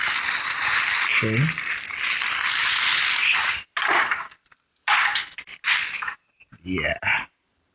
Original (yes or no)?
yes